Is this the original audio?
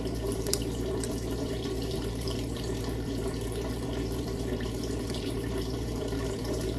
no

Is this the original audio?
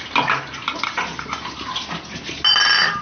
yes